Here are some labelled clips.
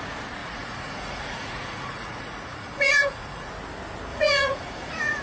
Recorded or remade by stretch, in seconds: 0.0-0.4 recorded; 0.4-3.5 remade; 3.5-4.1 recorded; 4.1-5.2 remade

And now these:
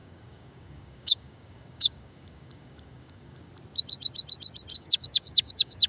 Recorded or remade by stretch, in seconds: 0.0-3.5 remade; 3.5-4.7 recorded; 4.7-5.9 remade

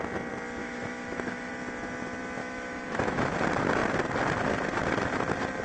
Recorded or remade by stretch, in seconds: 0.0-0.6 recorded; 0.6-1.5 remade; 1.5-2.4 recorded; 2.4-3.3 remade; 3.3-5.6 recorded

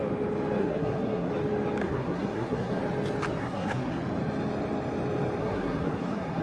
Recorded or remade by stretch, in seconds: 0.0-0.6 recorded; 0.6-1.3 remade; 1.3-1.8 recorded; 1.8-2.8 remade; 2.8-3.4 recorded; 3.4-4.0 remade; 4.0-5.4 recorded; 5.4-6.4 remade

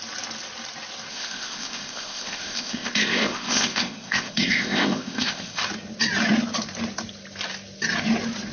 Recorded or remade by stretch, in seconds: 0.0-1.1 recorded; 1.1-5.6 remade; 5.6-8.5 recorded

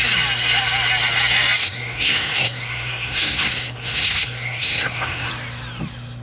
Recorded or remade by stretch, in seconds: 0.0-1.6 recorded; 1.6-5.3 remade; 5.3-6.2 recorded

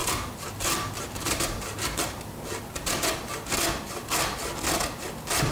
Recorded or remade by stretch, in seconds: 0.0-2.6 remade; 2.6-5.5 recorded

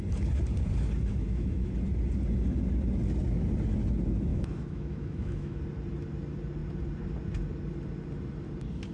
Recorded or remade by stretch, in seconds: 0.0-1.1 recorded; 1.1-1.7 remade; 1.7-4.3 recorded; 4.3-5.6 remade; 5.6-8.9 recorded